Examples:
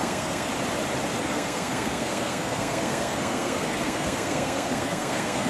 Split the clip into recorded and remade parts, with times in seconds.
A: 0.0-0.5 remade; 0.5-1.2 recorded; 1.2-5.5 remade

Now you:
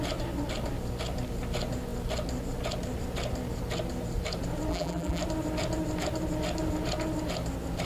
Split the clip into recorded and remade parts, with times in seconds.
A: 0.0-4.7 recorded; 4.7-5.2 remade; 5.2-7.9 recorded

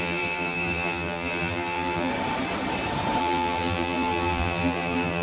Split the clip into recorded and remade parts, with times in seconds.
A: 0.0-2.1 remade; 2.1-3.2 recorded; 3.2-5.2 remade

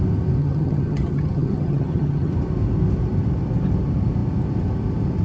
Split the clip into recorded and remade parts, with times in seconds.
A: 0.0-0.4 recorded; 0.4-2.3 remade; 2.3-5.2 recorded